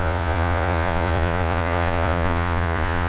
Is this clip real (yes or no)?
no